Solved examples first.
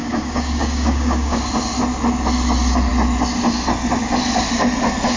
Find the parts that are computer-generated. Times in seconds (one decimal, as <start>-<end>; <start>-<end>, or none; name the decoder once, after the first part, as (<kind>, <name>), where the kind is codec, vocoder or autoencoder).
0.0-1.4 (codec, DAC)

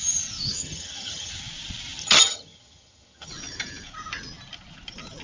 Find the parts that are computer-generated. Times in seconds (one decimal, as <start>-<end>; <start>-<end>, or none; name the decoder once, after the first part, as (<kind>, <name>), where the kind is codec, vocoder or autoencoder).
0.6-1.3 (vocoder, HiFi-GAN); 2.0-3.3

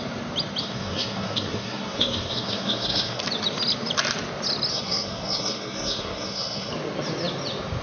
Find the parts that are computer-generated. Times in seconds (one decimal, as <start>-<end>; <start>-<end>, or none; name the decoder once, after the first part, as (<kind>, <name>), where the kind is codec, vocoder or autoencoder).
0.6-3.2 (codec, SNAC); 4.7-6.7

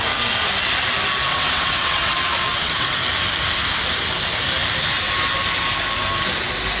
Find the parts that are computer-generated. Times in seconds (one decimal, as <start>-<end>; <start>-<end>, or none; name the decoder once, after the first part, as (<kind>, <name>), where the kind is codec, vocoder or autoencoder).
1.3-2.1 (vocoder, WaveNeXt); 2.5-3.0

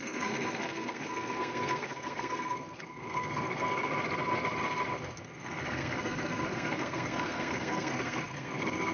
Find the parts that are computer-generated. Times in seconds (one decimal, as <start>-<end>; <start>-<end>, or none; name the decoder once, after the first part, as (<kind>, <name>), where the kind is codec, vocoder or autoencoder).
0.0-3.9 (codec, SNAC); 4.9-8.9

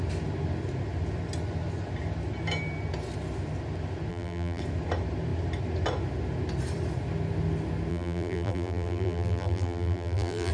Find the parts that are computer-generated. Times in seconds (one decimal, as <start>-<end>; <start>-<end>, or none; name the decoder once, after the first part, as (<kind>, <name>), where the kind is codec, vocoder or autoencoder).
4.1-4.6 (vocoder, BigVGAN v2); 7.9-10.5